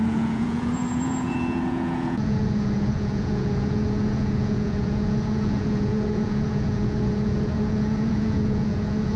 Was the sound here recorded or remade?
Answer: remade